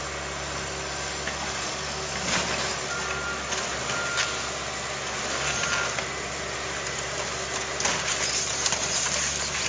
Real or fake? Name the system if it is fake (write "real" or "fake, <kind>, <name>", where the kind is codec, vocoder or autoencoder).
real